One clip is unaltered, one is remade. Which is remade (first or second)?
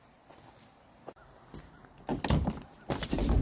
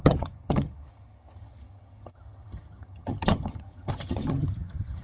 second